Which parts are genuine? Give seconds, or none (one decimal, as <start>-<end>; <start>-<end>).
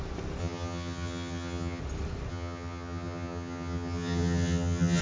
0.0-0.4; 1.8-2.3